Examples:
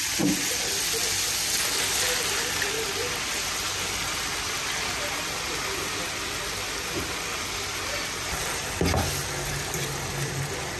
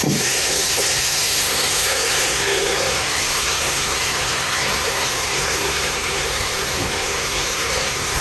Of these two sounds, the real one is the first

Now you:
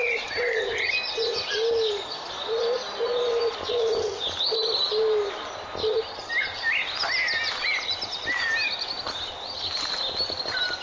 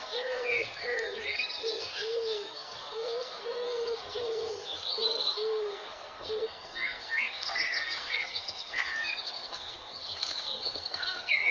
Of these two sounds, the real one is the first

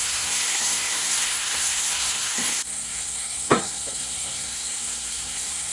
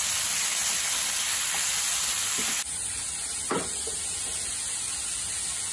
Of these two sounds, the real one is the second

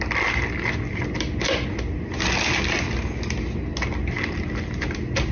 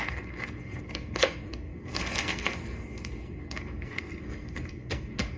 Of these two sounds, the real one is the first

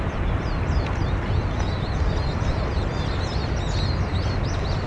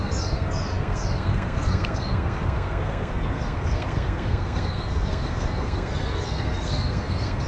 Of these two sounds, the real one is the first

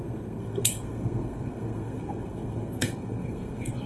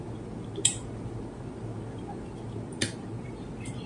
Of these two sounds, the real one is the second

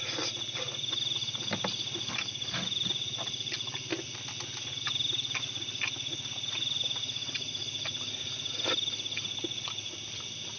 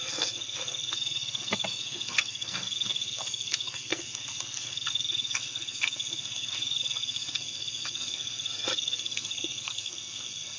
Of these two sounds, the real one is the first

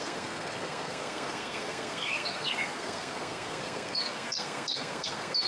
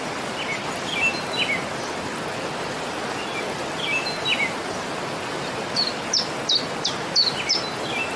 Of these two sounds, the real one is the second